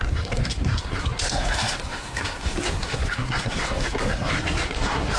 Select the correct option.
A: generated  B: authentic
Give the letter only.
A